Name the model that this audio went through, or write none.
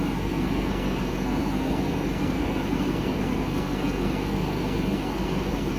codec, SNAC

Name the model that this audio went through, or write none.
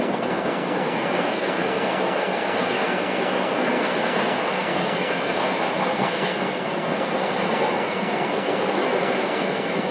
codec, SNAC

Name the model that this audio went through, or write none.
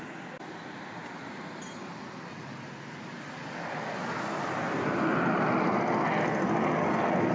none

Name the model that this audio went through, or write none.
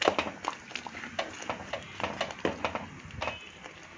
none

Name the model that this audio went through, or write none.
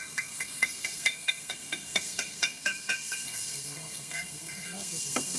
codec, SNAC